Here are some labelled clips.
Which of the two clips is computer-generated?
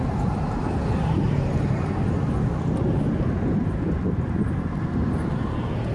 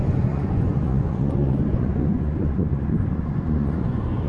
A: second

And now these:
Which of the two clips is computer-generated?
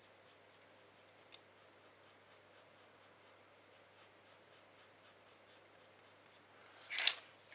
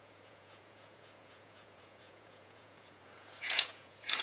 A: second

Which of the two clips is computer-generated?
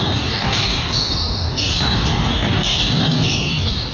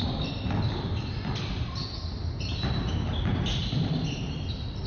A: first